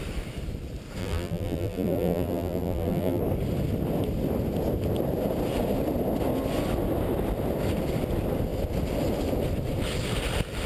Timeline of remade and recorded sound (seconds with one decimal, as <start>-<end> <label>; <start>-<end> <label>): 0.0-1.0 recorded; 1.0-3.2 remade; 3.2-10.7 recorded